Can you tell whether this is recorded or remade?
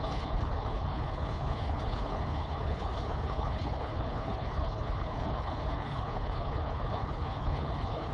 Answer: remade